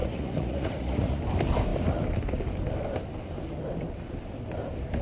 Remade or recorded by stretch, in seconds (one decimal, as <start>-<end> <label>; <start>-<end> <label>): 0.0-1.2 remade; 1.2-5.0 recorded